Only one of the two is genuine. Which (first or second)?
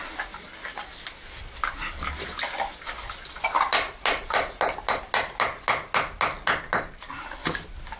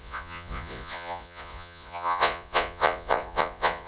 first